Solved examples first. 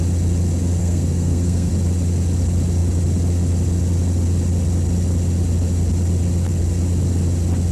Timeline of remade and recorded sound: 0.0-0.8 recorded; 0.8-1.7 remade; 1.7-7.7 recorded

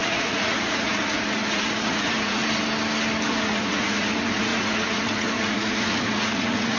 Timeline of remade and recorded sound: 0.0-2.4 remade; 2.4-3.3 recorded; 3.3-6.8 remade

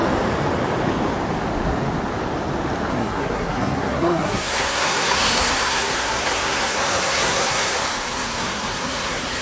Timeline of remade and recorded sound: 0.0-2.9 recorded; 2.9-9.4 remade

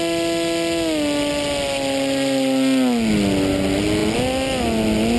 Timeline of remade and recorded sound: 0.0-5.2 recorded

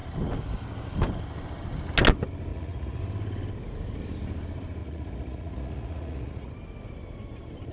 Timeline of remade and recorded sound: 0.0-2.5 recorded; 2.5-3.0 remade; 3.0-4.8 recorded; 4.8-6.5 remade; 6.5-7.7 recorded

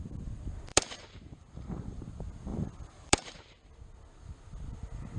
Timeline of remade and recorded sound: 0.0-0.7 recorded; 0.7-2.0 remade; 2.0-2.5 recorded; 2.5-3.7 remade; 3.7-5.2 recorded